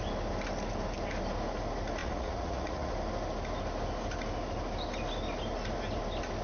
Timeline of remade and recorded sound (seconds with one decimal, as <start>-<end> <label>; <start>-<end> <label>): 0.0-2.0 recorded; 2.0-2.9 remade; 2.9-6.4 recorded